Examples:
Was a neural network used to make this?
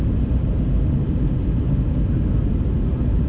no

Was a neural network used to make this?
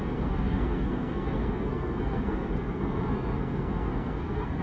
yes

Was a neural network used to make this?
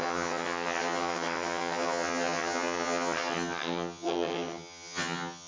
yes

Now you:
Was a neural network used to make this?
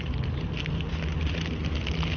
no